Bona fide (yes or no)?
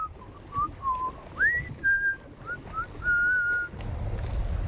yes